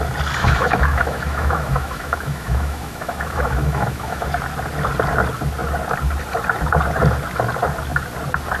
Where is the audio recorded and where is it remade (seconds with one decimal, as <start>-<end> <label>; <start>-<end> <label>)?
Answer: 0.0-0.4 recorded; 0.4-4.3 remade; 4.3-8.6 recorded